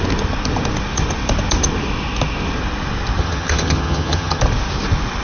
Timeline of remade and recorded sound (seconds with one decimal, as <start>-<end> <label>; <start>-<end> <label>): 0.0-3.2 recorded; 3.2-4.4 remade; 4.4-5.2 recorded